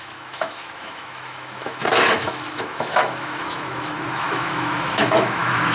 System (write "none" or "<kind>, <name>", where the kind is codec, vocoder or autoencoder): autoencoder, DAC-VAE